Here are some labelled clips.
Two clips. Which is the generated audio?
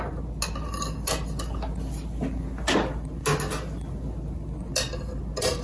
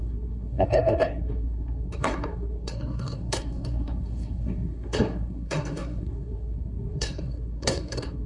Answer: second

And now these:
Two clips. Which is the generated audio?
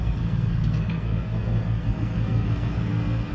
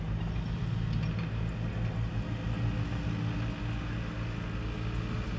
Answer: first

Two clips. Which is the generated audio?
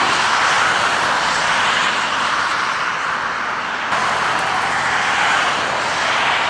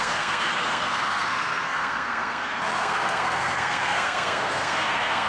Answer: second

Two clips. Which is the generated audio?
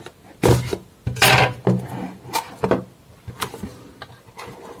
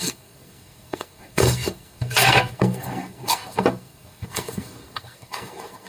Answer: second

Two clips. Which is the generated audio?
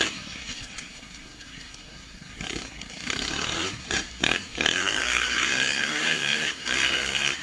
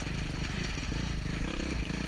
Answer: first